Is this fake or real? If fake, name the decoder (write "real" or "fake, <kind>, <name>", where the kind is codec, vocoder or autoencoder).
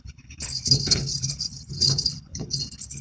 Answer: fake, codec, HILCodec